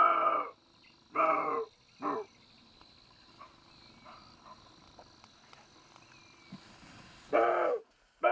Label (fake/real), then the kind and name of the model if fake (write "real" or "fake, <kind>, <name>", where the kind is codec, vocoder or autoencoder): real